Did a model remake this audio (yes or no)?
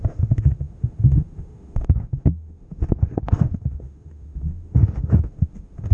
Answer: yes